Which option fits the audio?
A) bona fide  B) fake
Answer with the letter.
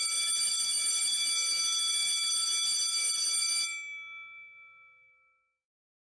A